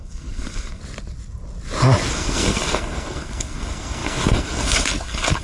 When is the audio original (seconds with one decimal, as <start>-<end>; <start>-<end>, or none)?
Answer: 0.8-2.1